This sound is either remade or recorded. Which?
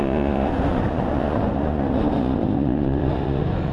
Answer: remade